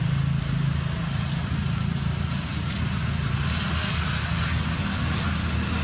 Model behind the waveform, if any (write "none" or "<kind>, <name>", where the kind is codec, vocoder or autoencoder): none